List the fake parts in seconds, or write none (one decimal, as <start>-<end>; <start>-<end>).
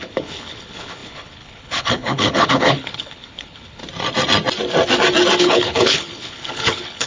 0.0-3.8; 5.4-7.1